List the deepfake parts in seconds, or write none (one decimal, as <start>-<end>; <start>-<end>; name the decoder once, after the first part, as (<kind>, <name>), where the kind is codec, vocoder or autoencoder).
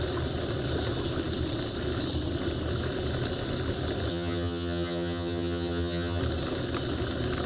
4.1-6.2 (vocoder, HiFi-GAN)